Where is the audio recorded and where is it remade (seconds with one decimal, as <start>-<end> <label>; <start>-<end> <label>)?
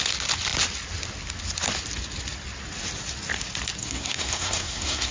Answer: 0.0-3.8 recorded; 3.8-5.1 remade